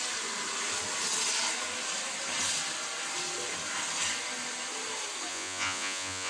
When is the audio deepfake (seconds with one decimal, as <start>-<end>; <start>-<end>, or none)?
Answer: 5.3-6.3